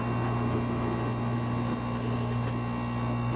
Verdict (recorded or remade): recorded